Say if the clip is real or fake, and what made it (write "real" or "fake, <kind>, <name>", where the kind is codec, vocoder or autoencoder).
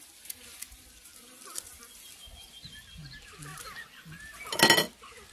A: real